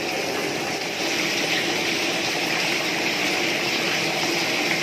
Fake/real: real